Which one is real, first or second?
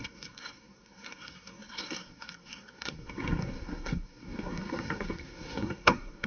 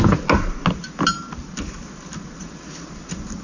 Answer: second